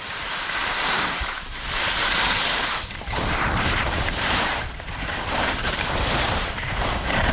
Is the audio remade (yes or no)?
yes